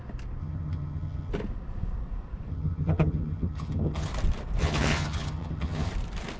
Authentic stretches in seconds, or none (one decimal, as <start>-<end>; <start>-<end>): 0.0-0.4; 1.3-2.5; 4.1-4.6; 5.9-6.4